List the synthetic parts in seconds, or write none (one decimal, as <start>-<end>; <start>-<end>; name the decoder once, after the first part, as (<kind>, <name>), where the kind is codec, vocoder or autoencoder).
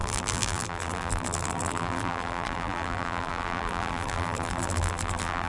0.0-5.5 (vocoder, BigVGAN v2)